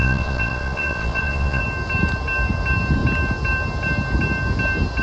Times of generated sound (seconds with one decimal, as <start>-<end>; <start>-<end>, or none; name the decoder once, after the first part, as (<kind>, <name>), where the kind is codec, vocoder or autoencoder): 0.0-1.6 (vocoder, Vocos)